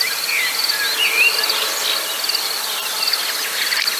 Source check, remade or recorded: recorded